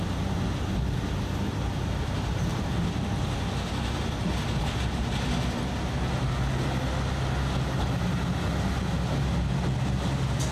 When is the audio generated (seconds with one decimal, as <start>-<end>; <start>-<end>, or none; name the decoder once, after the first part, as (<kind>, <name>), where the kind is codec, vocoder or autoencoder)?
1.5-2.1 (vocoder, BigVGAN v2); 2.5-3.7